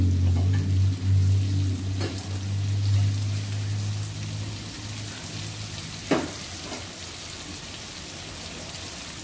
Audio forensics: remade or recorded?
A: recorded